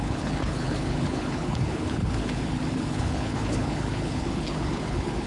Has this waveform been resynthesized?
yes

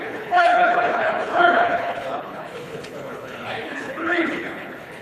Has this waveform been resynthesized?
yes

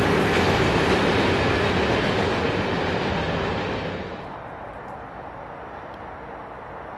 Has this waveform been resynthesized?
no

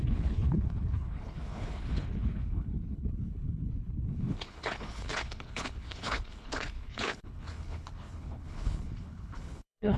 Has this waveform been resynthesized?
yes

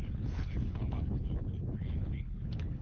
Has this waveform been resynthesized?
yes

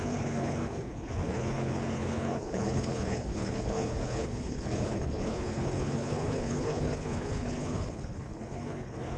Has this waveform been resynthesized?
yes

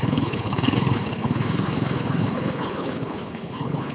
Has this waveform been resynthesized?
yes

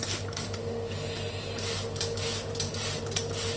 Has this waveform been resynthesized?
no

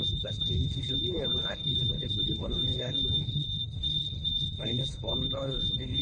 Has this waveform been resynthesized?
yes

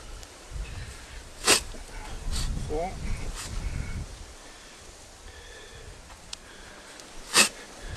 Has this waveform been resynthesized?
no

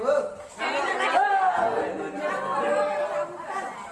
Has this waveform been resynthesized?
no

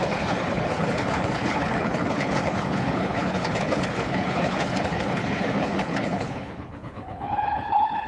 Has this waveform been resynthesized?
yes